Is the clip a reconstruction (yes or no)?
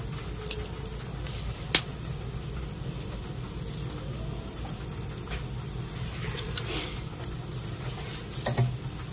no